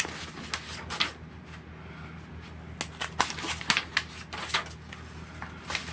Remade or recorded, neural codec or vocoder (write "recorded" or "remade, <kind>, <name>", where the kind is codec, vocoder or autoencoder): recorded